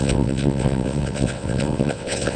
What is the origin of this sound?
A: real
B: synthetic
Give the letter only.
B